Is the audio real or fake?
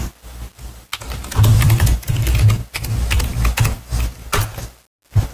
real